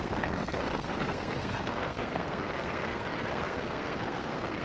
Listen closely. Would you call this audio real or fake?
fake